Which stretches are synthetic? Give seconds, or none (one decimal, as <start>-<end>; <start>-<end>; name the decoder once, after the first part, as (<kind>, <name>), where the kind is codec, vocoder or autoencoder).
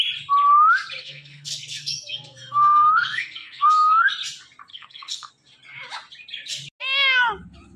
1.0-4.1 (codec, SNAC); 4.7-5.3